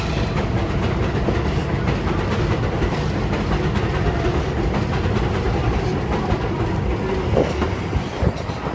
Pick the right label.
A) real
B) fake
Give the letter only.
A